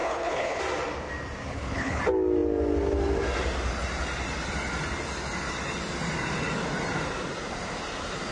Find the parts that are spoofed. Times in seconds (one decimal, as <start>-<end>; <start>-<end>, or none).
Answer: 0.0-0.6; 1.5-2.0